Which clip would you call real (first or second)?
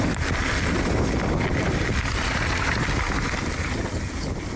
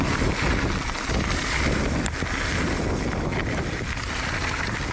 second